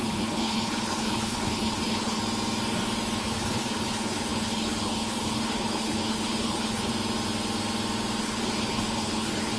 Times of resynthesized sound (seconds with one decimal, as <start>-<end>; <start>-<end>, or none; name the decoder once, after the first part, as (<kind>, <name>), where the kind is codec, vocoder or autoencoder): 0.0-2.2 (codec, HILCodec); 3.2-6.9; 8.2-9.6